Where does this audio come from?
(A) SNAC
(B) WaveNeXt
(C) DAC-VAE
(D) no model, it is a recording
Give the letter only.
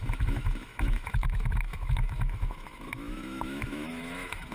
C